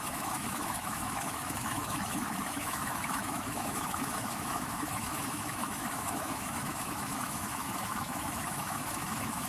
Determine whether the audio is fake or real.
fake